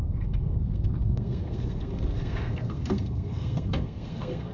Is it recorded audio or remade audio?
remade